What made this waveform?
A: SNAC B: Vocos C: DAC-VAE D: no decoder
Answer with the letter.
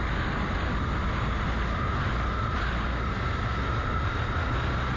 D